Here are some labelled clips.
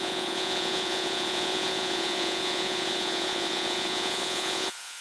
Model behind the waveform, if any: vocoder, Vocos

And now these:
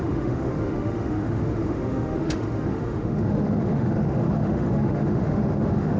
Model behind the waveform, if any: autoencoder, DAC-VAE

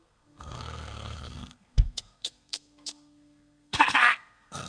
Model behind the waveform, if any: codec, SNAC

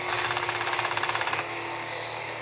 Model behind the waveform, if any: none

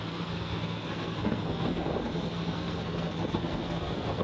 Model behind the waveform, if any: codec, SNAC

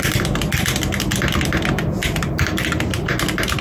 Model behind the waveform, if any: none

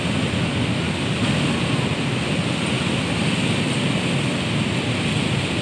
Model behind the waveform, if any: none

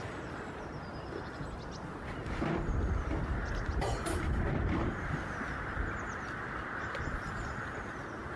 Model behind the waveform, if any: none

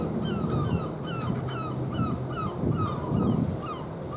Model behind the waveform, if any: none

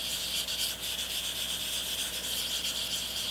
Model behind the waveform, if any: none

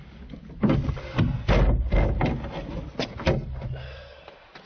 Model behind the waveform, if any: none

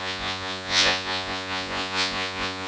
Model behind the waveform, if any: vocoder, Vocos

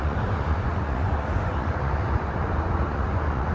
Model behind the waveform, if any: vocoder, Vocos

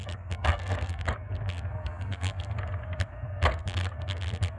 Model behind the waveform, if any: codec, SNAC